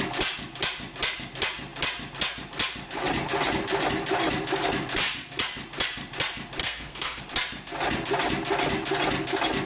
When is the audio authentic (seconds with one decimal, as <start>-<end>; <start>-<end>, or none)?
0.0-6.6; 7.2-9.7